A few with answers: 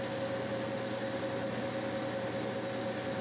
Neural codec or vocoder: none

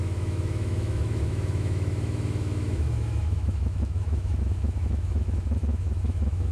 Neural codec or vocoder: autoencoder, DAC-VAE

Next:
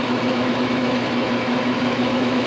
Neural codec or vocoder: autoencoder, DAC-VAE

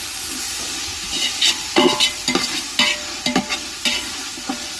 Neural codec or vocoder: none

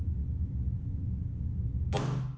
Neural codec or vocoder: none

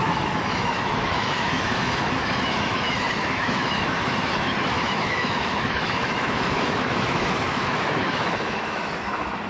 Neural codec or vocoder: autoencoder, DAC-VAE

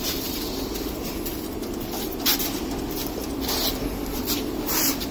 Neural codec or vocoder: none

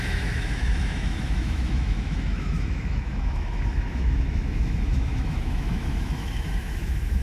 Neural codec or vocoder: autoencoder, DAC-VAE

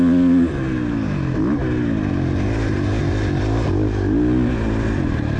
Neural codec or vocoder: none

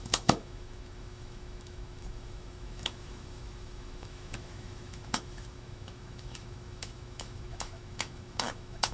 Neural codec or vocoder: autoencoder, DAC-VAE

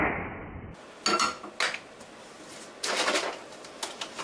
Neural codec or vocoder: none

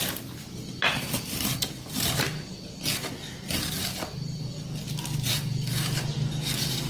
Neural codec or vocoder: none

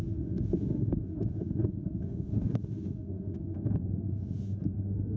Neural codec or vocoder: autoencoder, DAC-VAE